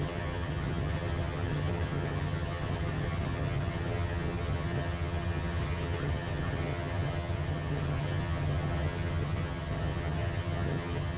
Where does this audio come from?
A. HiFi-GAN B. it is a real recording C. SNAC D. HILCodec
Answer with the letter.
A